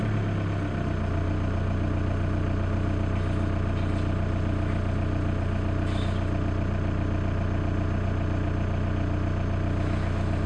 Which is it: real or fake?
real